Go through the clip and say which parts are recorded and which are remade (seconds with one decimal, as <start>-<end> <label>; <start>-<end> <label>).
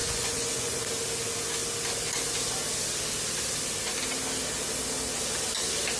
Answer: 0.0-0.8 remade; 0.8-6.0 recorded